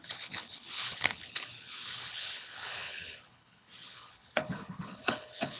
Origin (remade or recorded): remade